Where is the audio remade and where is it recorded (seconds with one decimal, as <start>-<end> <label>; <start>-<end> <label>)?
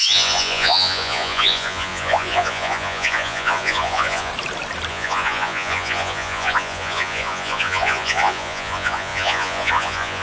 0.0-4.3 remade; 4.3-4.9 recorded; 4.9-10.2 remade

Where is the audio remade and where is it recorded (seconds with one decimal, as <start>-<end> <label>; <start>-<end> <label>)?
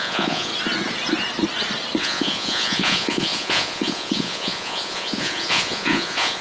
0.0-0.5 remade; 0.5-2.0 recorded; 2.0-6.4 remade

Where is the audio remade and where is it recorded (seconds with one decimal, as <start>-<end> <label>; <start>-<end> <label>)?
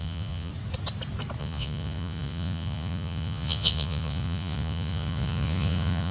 0.0-0.5 remade; 0.5-1.4 recorded; 1.4-6.1 remade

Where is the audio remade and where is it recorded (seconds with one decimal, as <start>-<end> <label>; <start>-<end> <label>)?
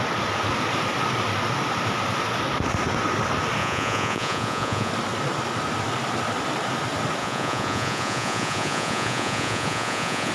0.0-3.6 recorded; 3.6-4.9 remade; 4.9-7.2 recorded; 7.2-10.3 remade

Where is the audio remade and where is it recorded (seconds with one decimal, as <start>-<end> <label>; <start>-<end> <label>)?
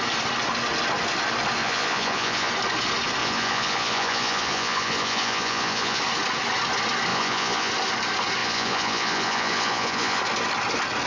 0.0-1.6 recorded; 1.6-2.5 remade; 2.5-3.2 recorded; 3.2-6.0 remade; 6.0-7.1 recorded; 7.1-7.7 remade; 7.7-8.4 recorded; 8.4-10.2 remade; 10.2-11.1 recorded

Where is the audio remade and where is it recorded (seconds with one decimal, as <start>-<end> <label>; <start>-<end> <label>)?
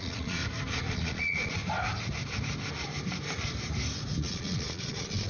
0.0-0.4 remade; 0.4-0.9 recorded; 0.9-1.6 remade; 1.6-4.2 recorded; 4.2-5.3 remade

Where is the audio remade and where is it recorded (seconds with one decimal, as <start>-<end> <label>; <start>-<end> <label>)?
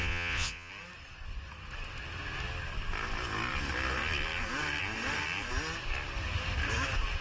0.0-0.7 remade; 0.7-7.2 recorded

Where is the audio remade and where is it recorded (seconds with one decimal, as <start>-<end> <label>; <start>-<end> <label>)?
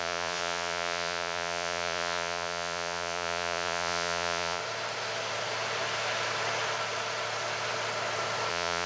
0.0-4.6 remade; 4.6-8.5 recorded; 8.5-8.9 remade